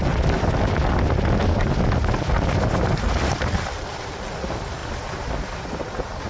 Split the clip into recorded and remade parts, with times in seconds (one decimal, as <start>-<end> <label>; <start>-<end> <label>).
0.0-6.3 recorded